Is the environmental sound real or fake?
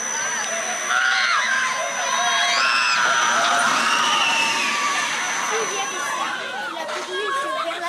real